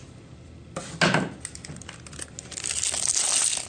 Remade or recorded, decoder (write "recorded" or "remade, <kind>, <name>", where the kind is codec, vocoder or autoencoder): recorded